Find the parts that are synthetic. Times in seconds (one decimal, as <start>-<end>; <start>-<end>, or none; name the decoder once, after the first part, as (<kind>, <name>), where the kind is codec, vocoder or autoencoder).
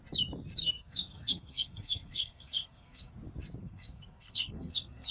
0.6-3.1 (codec, SNAC); 3.6-5.1